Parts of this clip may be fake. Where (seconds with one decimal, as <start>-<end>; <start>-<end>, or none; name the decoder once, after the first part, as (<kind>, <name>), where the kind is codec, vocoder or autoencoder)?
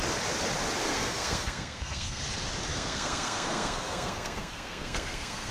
0.8-2.2 (codec, SNAC); 2.7-5.5